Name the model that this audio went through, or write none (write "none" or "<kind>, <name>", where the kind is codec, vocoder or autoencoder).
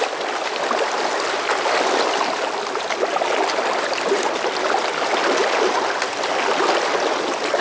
none